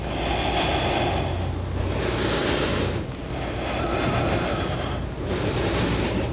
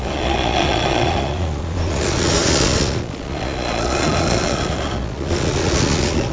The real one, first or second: first